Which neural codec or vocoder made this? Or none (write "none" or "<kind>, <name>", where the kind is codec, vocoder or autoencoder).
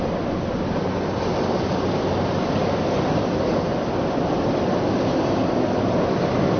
none